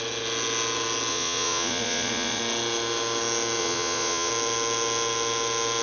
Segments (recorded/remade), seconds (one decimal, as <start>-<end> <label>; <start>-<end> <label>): 0.0-1.1 recorded; 1.1-2.4 remade; 2.4-3.6 recorded; 3.6-4.3 remade; 4.3-5.8 recorded